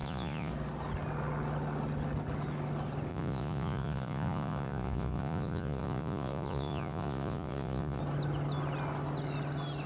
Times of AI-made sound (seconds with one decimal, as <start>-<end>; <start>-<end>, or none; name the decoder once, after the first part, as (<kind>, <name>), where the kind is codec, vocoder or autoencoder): 0.0-0.5 (vocoder, Vocos); 3.1-8.0